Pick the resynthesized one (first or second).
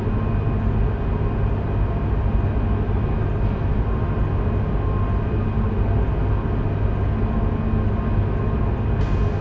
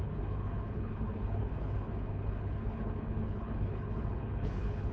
second